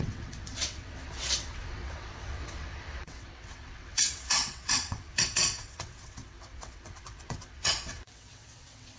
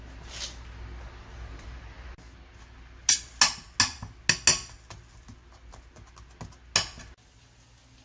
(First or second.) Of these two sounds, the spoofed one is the first